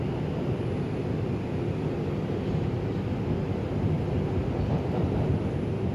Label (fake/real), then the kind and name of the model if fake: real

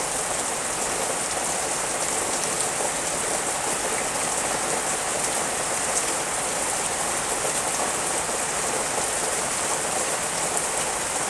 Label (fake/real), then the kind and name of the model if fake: real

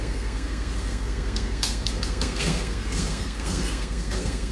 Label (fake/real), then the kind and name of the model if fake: fake, codec, SNAC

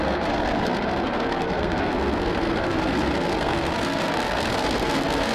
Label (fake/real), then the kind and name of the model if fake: fake, codec, SNAC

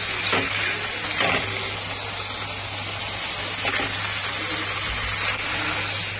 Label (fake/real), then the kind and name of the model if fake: real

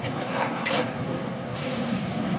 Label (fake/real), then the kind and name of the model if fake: fake, codec, SNAC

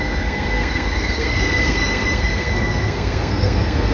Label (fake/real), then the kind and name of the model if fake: fake, codec, SNAC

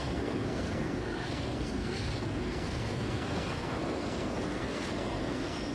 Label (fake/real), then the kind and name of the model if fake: fake, codec, SNAC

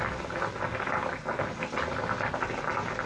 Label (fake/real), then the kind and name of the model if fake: real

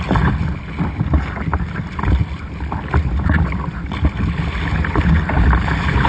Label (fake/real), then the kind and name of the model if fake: real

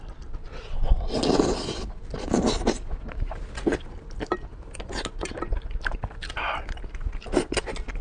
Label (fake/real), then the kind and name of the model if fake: real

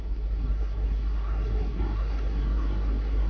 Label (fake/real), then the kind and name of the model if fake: fake, codec, SNAC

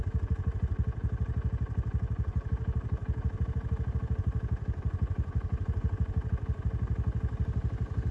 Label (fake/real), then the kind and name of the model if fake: real